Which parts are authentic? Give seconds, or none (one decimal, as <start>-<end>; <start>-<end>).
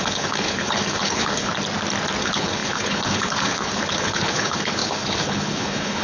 1.5-2.2